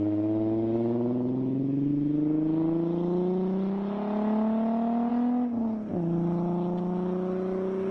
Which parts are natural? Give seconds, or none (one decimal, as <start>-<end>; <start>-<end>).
0.0-7.9